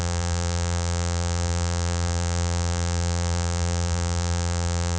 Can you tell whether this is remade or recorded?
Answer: remade